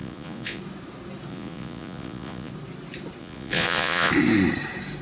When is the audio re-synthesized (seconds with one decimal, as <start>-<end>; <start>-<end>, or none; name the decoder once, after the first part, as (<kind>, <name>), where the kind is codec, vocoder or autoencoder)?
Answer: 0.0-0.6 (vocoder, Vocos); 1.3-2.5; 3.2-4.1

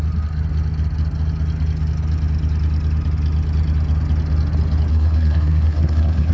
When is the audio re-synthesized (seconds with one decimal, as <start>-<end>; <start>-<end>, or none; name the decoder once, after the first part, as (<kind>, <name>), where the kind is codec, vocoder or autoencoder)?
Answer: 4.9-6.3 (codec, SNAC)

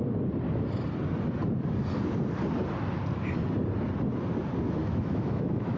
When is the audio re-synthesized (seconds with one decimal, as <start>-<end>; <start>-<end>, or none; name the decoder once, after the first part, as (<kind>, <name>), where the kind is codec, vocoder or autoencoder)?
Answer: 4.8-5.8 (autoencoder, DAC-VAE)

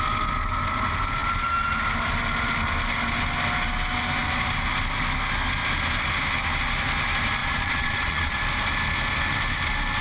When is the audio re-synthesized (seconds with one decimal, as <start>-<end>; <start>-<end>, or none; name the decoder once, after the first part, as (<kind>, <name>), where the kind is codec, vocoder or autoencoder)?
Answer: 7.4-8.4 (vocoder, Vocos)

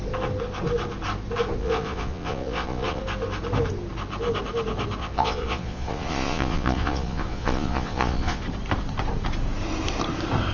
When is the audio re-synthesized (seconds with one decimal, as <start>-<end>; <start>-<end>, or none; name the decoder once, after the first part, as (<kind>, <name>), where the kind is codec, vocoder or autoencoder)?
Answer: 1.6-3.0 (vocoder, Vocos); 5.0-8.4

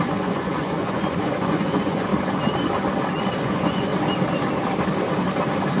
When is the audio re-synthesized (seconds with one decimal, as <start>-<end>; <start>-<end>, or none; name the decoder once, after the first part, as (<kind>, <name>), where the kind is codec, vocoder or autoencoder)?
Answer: 0.0-2.1 (vocoder, Vocos); 3.4-3.9